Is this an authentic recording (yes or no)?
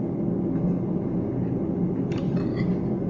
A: yes